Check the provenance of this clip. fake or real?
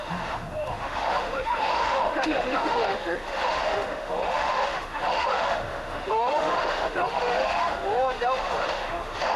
fake